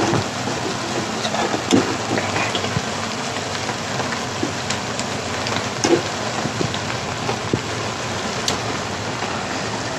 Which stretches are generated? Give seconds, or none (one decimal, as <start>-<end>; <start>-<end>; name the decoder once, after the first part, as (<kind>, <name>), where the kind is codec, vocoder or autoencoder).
none